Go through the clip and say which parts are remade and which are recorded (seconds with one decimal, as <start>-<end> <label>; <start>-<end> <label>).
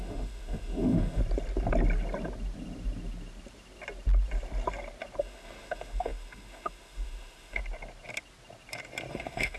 0.0-1.2 remade; 1.2-5.2 recorded; 5.2-7.6 remade; 7.6-9.1 recorded; 9.1-9.6 remade